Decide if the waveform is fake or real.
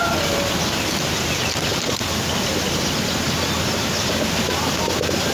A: real